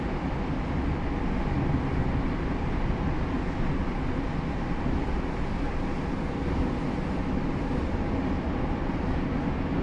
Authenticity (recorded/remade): recorded